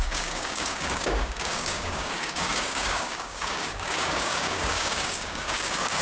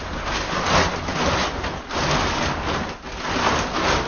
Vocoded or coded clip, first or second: first